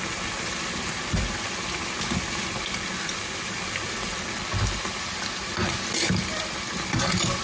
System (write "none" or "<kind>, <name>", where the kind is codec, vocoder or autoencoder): none